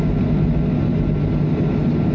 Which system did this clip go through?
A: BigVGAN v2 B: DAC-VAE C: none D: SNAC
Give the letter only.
C